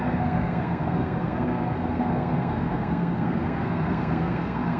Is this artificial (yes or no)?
yes